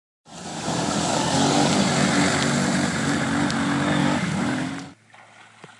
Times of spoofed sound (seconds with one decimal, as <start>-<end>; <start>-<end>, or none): 0.5-1.7; 4.0-4.7